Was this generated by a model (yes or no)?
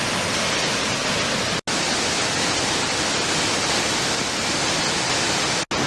no